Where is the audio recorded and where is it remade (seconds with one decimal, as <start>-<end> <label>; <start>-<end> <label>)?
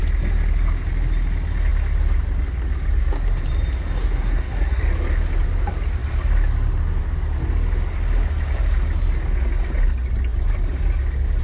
0.0-4.0 recorded; 4.0-4.8 remade; 4.8-11.4 recorded